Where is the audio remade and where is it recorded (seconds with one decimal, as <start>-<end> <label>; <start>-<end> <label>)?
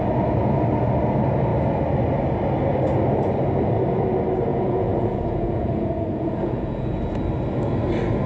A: 0.0-4.5 recorded; 4.5-7.2 remade; 7.2-8.3 recorded